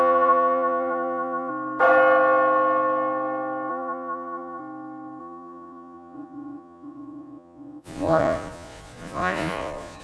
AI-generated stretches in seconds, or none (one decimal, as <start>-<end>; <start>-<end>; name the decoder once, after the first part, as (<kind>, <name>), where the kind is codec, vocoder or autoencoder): 0.0-1.5 (vocoder, Vocos); 3.7-4.6; 5.2-10.0